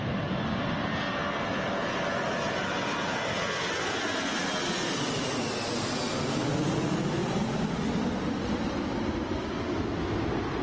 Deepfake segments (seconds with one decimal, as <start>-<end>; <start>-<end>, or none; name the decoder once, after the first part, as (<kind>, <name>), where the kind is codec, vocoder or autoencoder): none